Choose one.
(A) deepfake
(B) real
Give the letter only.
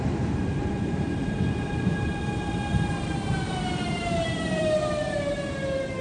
A